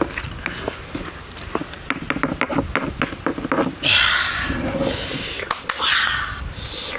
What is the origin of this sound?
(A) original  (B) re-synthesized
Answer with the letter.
A